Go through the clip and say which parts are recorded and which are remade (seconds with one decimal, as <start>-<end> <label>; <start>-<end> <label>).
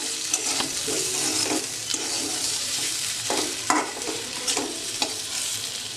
0.0-1.9 recorded; 1.9-5.0 remade; 5.0-6.0 recorded